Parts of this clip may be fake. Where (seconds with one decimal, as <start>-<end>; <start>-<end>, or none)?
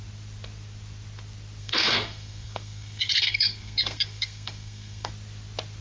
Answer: 1.6-5.1